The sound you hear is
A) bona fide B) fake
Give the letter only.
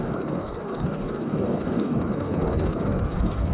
B